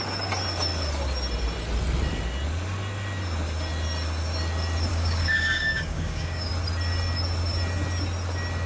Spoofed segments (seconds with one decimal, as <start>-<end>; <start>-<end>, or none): 4.9-6.5